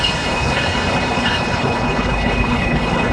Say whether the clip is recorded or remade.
remade